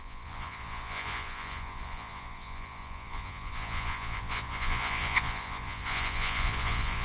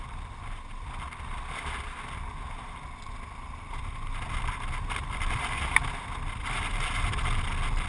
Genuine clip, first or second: second